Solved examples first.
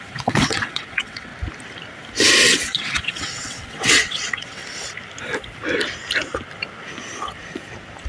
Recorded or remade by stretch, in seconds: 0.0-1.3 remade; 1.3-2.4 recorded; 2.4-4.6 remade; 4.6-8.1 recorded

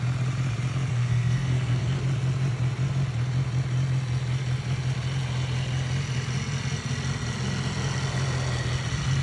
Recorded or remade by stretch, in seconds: 0.0-0.9 recorded; 0.9-2.0 remade; 2.0-9.2 recorded

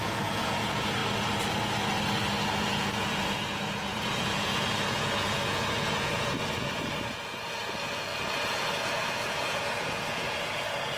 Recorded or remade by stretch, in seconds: 0.0-1.0 remade; 1.0-2.6 recorded; 2.6-11.0 remade

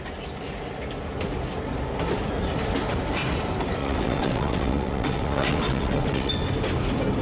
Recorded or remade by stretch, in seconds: 0.0-3.8 recorded; 3.8-6.3 remade; 6.3-7.2 recorded

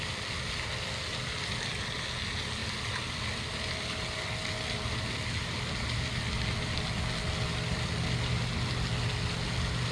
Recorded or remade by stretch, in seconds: 0.0-9.9 recorded

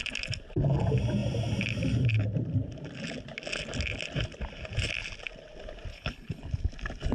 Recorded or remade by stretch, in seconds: 0.0-5.9 recorded; 5.9-6.4 remade; 6.4-7.1 recorded

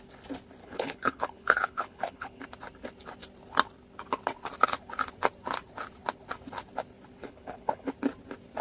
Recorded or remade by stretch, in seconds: 0.0-0.6 recorded; 0.6-2.4 remade; 2.4-7.2 recorded; 7.2-7.9 remade; 7.9-8.6 recorded

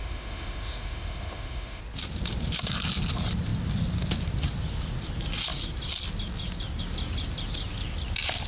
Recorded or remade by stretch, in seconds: 0.0-1.8 remade; 1.8-8.5 recorded